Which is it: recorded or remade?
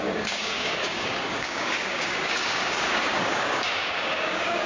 remade